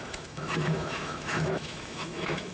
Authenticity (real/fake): fake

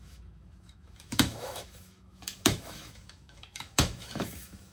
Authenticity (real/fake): fake